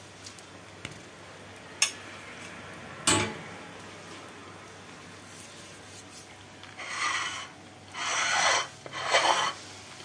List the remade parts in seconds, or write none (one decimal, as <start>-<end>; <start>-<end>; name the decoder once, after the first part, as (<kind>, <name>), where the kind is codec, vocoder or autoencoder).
none